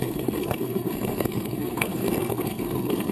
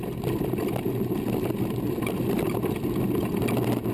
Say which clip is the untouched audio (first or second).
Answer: second